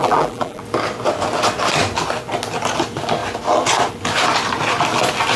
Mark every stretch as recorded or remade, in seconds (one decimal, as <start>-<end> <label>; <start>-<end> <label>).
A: 0.0-0.6 remade; 0.6-5.4 recorded

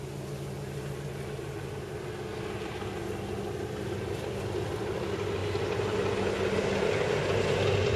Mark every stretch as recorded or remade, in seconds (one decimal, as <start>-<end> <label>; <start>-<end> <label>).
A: 0.0-8.0 recorded

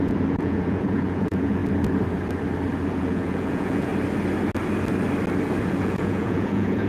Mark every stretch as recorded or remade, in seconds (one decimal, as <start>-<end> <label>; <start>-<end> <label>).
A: 0.0-1.6 remade; 1.6-2.9 recorded; 2.9-3.9 remade; 3.9-5.6 recorded; 5.6-6.9 remade